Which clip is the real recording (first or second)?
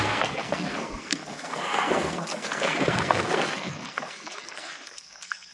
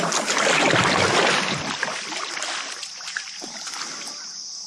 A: second